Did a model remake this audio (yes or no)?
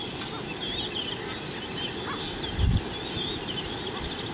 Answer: no